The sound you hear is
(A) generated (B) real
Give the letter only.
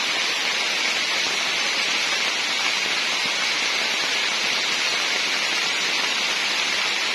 B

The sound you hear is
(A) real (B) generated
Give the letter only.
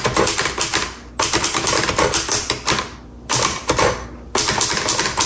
A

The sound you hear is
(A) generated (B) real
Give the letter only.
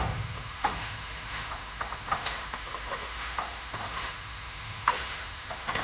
A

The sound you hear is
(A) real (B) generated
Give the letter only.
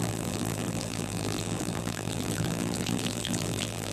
B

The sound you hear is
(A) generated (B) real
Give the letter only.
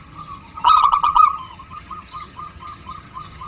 A